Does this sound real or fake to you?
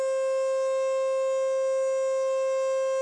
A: real